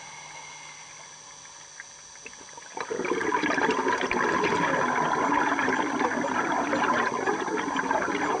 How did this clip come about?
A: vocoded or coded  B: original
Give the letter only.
B